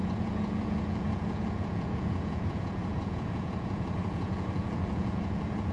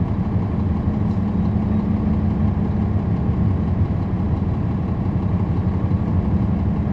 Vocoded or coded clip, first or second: first